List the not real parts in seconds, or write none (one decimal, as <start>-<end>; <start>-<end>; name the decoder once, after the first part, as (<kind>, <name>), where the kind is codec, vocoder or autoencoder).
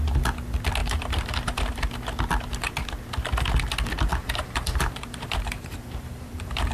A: 0.8-1.9 (vocoder, BigVGAN v2); 4.1-6.7